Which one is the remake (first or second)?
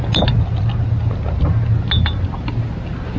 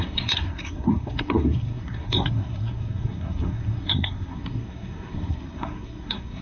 second